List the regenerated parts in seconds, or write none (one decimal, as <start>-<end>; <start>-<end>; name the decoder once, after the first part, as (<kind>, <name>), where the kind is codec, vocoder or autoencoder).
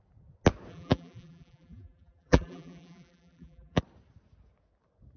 0.7-3.8 (vocoder, BigVGAN v2)